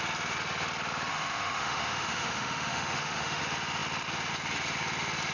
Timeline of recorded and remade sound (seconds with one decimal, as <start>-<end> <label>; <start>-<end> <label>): 0.0-1.1 recorded; 1.1-3.4 remade; 3.4-5.3 recorded